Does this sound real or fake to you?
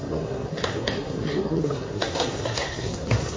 fake